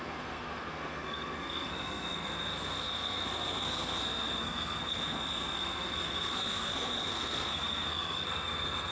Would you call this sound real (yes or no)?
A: no